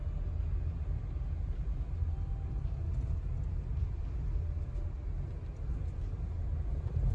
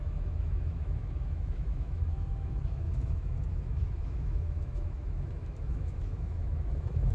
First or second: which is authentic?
first